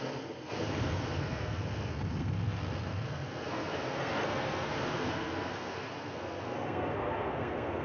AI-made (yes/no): yes